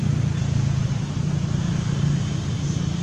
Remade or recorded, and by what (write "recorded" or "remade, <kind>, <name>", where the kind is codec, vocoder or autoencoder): recorded